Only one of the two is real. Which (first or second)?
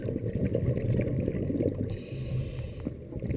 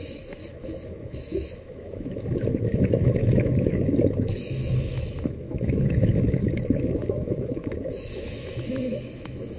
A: first